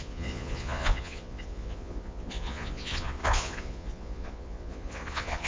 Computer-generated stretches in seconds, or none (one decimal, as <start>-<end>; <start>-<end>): 0.0-5.5